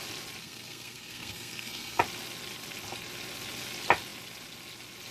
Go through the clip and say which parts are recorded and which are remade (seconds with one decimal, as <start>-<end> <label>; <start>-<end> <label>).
0.0-0.4 recorded; 0.4-2.0 remade; 2.0-5.1 recorded